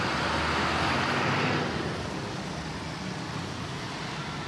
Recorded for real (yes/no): yes